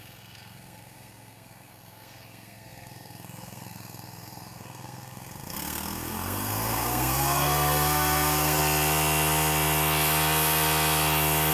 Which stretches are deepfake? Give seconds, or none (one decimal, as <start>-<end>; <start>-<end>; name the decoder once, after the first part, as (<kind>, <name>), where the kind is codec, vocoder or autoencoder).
0.0-8.6 (codec, SNAC)